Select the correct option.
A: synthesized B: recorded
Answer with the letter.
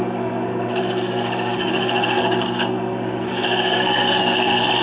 A